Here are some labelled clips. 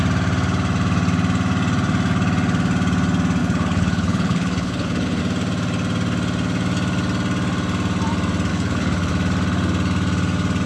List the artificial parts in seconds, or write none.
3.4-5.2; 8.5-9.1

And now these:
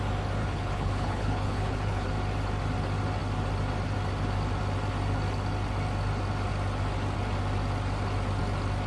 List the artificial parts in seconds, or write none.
0.4-2.1

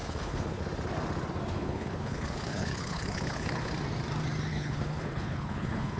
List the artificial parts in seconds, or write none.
0.0-0.6; 1.5-3.7; 4.5-6.0

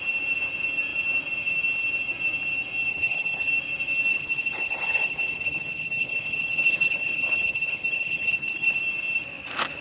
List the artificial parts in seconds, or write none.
2.9-3.5; 4.1-8.8